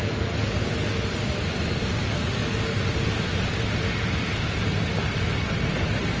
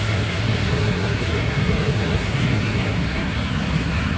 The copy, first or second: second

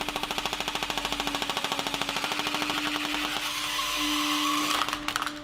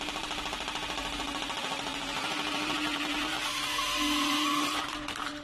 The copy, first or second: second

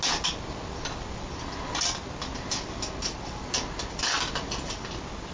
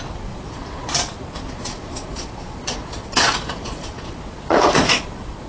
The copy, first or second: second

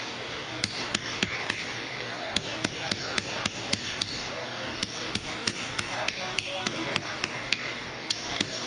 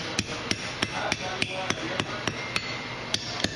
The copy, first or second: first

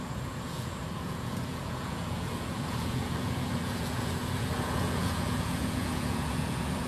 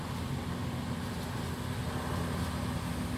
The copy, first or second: first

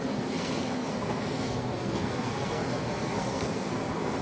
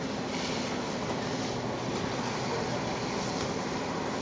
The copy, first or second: first